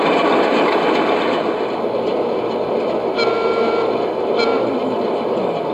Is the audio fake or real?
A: real